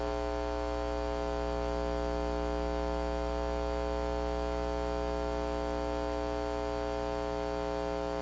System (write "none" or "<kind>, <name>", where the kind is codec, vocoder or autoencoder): none